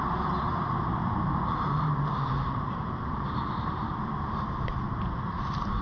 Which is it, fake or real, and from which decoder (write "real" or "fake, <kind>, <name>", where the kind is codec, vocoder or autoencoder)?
fake, vocoder, BigVGAN v2